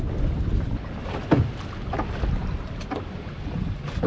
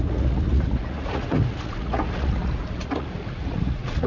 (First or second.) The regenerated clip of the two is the second